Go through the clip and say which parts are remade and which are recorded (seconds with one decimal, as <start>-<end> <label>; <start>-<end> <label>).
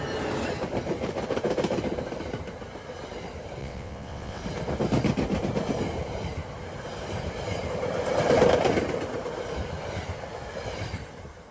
0.0-3.6 recorded; 3.6-4.4 remade; 4.4-11.5 recorded